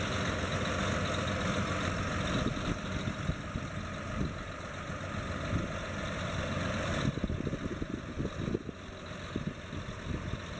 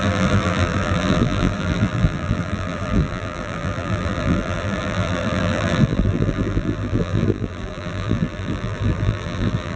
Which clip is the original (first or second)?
first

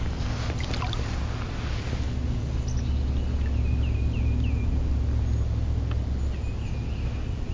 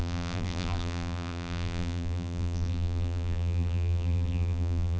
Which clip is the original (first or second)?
first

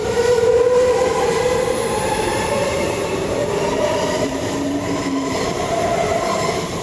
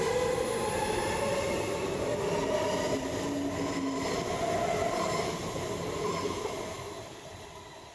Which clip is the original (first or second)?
second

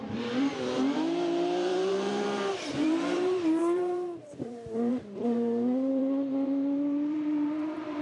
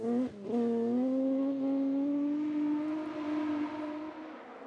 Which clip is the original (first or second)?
second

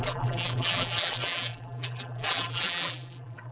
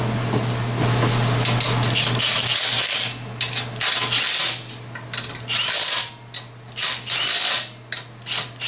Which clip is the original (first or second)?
second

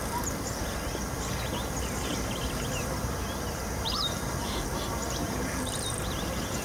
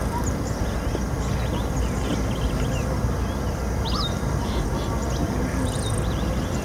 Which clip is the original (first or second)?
second